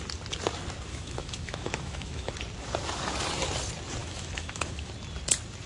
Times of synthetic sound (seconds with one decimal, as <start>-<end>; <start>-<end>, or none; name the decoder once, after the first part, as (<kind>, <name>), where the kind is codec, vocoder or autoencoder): 0.9-2.3 (autoencoder, DAC-VAE); 4.0-4.9